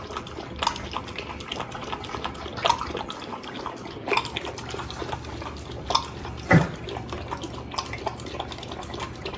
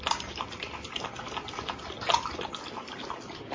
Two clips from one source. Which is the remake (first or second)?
second